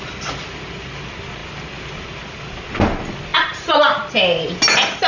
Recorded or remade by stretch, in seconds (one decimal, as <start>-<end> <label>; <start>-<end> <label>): 0.0-5.1 recorded

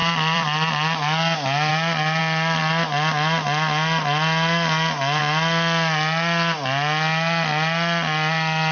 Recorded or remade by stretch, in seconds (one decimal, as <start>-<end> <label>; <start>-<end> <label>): 0.0-0.7 remade; 0.7-1.7 recorded; 1.7-2.2 remade; 2.2-8.7 recorded

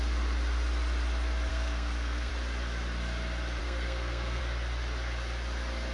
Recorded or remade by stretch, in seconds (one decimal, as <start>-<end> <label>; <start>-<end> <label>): 0.0-1.5 recorded; 1.5-2.3 remade; 2.3-3.6 recorded; 3.6-4.4 remade; 4.4-5.9 recorded

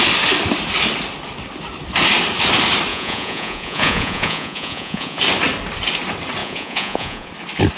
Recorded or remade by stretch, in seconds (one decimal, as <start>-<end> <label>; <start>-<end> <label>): 0.0-2.9 recorded; 2.9-5.2 remade; 5.2-6.4 recorded; 6.4-7.3 remade; 7.3-7.8 recorded

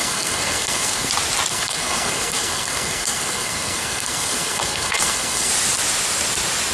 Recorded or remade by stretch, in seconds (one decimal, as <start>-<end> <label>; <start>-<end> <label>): 0.0-1.1 remade; 1.1-1.5 recorded; 1.5-5.5 remade; 5.5-6.7 recorded

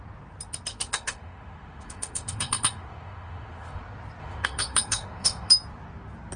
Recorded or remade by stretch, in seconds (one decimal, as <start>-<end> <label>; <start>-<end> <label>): 0.0-0.7 recorded; 0.7-3.8 remade; 3.8-4.2 recorded; 4.2-5.5 remade; 5.5-6.4 recorded

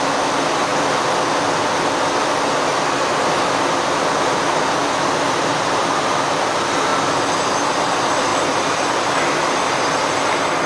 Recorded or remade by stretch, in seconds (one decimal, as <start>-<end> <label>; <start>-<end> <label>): 0.0-8.3 recorded; 8.3-9.5 remade; 9.5-10.7 recorded

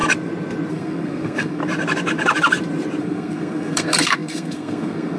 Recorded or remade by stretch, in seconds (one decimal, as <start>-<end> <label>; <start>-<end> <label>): 0.0-0.7 recorded; 0.7-1.6 remade; 1.6-3.0 recorded; 3.0-5.2 remade